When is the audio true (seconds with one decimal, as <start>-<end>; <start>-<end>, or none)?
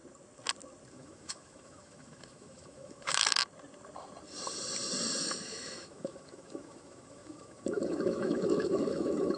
0.0-0.9; 3.4-5.2